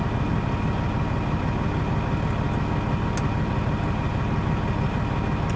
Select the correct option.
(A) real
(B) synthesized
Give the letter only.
A